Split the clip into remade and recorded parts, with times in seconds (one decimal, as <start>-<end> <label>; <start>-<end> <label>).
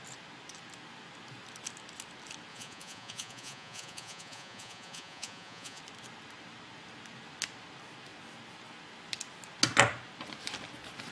0.0-2.5 recorded; 2.5-5.8 remade; 5.8-11.1 recorded